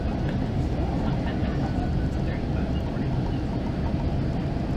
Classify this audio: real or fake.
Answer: real